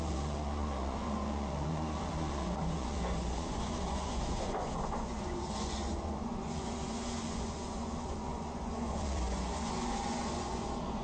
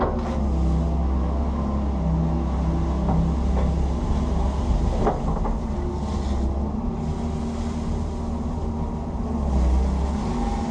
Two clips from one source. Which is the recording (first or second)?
second